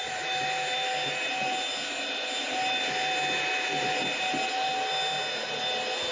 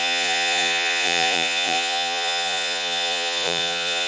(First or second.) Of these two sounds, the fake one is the second